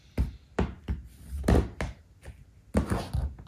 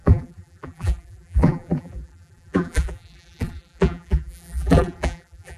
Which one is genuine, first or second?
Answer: first